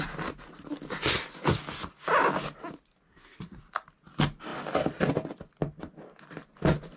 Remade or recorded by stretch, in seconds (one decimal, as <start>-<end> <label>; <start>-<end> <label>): 0.0-3.1 recorded; 3.1-3.6 remade; 3.6-7.0 recorded